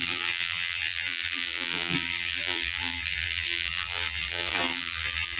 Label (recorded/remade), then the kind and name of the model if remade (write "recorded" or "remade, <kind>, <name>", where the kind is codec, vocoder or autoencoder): remade, vocoder, BigVGAN v2